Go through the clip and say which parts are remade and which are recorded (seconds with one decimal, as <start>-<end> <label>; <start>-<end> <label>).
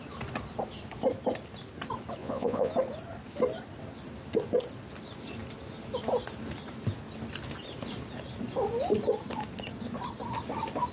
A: 0.0-2.2 recorded; 2.2-2.7 remade; 2.7-10.9 recorded